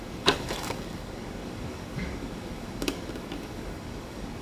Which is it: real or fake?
fake